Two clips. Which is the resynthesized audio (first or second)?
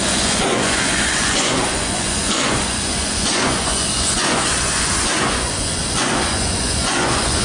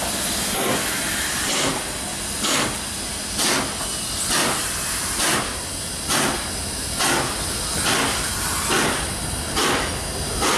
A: first